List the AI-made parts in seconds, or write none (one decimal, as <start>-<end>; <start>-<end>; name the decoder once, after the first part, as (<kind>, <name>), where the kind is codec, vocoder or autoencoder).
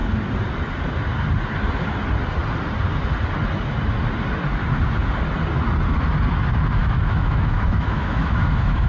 6.8-8.9 (autoencoder, DAC-VAE)